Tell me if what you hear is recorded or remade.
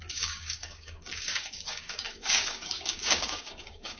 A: remade